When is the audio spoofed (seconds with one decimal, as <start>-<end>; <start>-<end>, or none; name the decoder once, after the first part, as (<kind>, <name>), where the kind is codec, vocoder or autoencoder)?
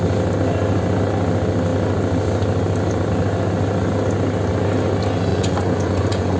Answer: 5.3-6.4 (vocoder, Vocos)